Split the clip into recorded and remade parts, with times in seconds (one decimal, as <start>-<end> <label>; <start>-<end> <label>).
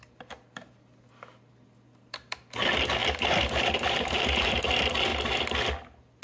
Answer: 0.0-3.0 recorded; 3.0-4.6 remade; 4.6-6.2 recorded